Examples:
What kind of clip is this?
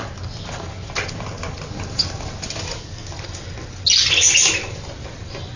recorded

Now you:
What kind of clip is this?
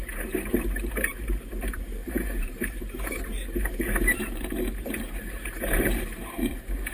remade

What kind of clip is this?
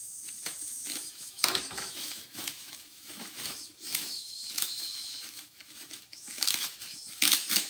remade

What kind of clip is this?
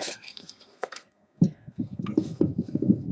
remade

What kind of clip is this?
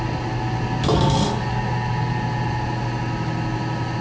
recorded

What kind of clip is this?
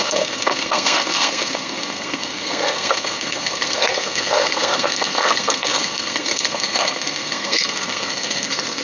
remade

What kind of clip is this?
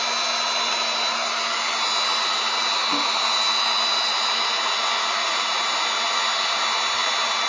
recorded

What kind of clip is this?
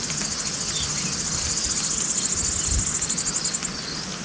recorded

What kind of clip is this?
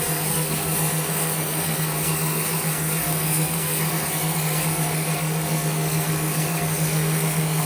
remade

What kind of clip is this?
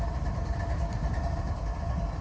recorded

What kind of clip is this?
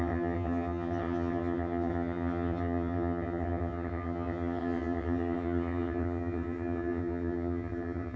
remade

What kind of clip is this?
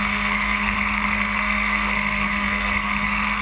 remade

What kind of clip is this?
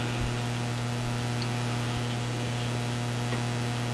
recorded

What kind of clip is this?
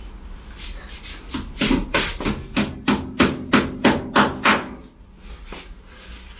recorded